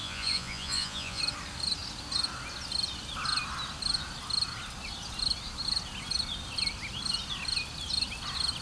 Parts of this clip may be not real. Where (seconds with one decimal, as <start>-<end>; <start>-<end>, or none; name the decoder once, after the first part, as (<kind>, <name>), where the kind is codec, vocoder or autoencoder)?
0.0-1.2 (vocoder, Vocos)